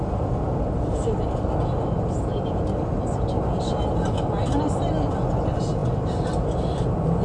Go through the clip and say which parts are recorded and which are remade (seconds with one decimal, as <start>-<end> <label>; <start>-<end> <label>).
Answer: 0.0-7.2 recorded